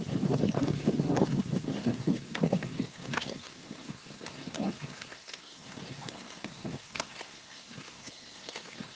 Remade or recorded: remade